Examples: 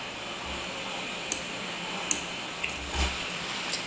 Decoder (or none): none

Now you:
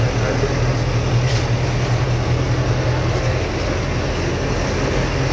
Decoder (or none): none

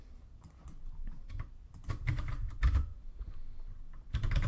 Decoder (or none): vocoder, BigVGAN v2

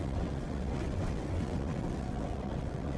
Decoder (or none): vocoder, WaveNeXt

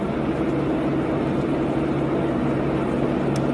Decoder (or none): none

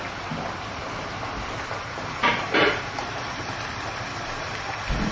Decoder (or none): vocoder, BigVGAN v2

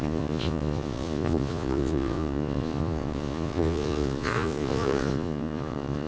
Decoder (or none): vocoder, Vocos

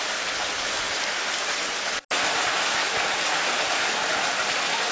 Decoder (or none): none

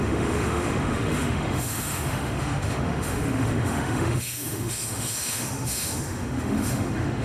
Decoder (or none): autoencoder, DAC-VAE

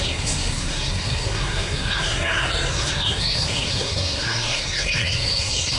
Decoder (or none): codec, SNAC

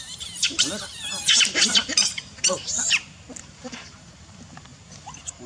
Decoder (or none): vocoder, BigVGAN v2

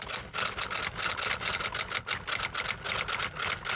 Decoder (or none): none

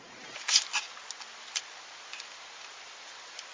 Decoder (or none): none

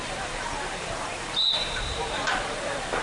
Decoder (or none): vocoder, BigVGAN v2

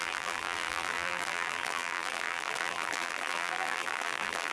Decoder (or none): vocoder, BigVGAN v2